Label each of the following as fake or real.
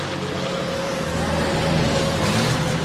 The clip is real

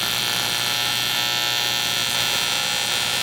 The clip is real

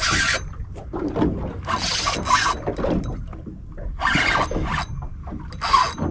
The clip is real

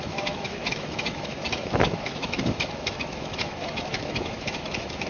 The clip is fake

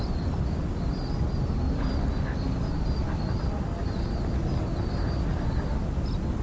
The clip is real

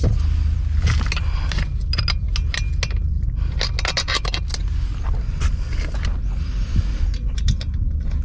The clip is real